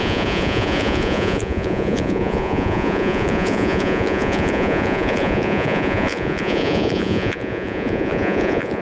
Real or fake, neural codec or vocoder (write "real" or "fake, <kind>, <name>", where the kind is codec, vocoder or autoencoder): fake, vocoder, Vocos